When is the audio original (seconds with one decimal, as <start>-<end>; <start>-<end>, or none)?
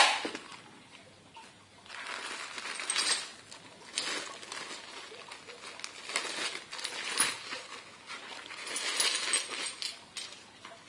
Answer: 0.0-10.9